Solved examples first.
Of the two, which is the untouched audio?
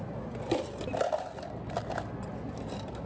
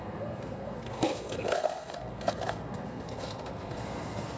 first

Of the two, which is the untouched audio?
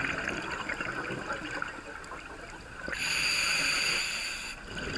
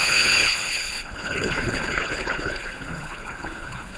first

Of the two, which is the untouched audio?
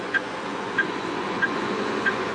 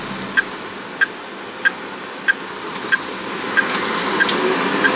second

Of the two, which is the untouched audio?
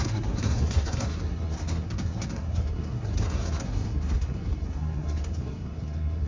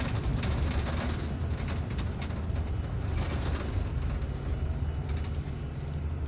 second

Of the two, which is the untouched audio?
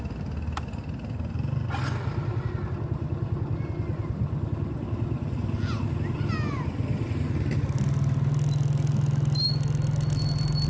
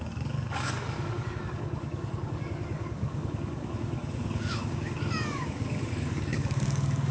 first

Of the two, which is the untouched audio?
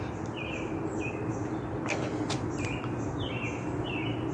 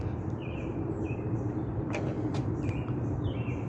first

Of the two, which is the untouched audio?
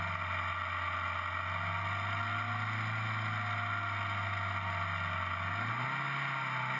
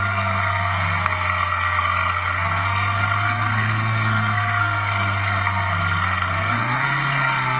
first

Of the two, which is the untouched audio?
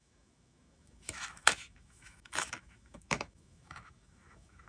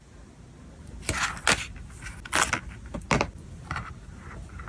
second